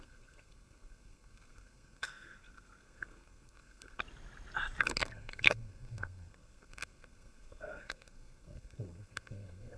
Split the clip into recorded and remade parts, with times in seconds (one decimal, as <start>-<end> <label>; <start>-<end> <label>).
0.0-4.0 remade; 4.0-4.8 recorded; 4.8-9.8 remade